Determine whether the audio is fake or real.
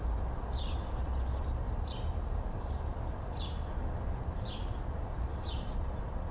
real